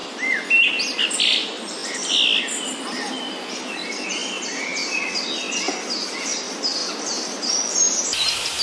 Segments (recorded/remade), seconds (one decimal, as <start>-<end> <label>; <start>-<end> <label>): 0.0-8.6 recorded